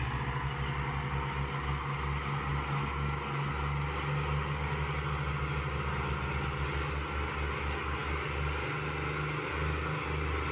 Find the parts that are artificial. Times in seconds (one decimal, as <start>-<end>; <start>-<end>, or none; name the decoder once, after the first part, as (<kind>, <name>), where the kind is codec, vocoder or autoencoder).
none